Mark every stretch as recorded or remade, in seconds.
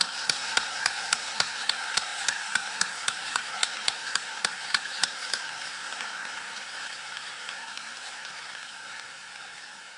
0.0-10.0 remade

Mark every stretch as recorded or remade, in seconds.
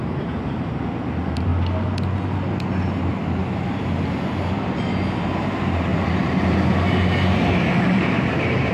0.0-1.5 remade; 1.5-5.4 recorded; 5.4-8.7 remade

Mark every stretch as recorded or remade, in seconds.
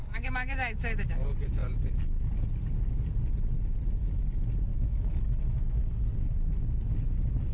0.0-4.7 recorded; 4.7-5.2 remade; 5.2-7.5 recorded